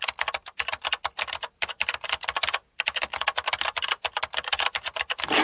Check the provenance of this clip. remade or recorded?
recorded